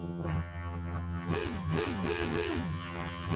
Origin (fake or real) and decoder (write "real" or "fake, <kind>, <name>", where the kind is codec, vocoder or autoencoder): fake, vocoder, HiFi-GAN